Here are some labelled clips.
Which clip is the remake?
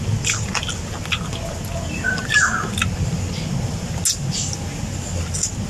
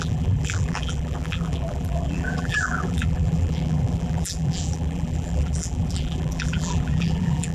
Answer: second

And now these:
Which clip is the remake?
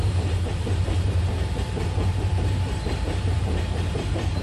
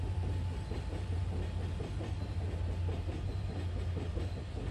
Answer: first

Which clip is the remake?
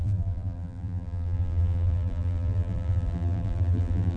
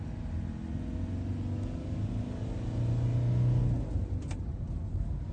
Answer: first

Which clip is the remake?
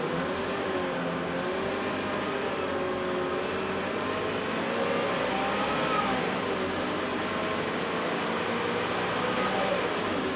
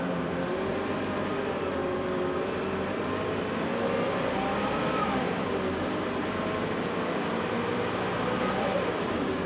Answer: second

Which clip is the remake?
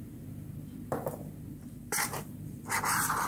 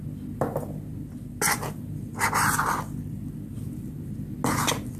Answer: first